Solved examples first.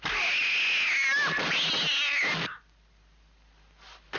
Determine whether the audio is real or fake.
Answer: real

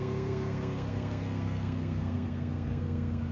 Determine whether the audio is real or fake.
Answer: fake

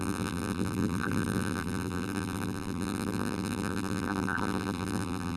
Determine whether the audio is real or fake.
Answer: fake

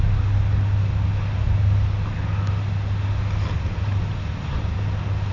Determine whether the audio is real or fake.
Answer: real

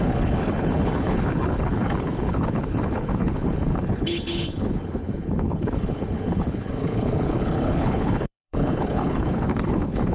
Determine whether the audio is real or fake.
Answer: fake